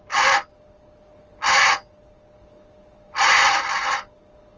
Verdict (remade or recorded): recorded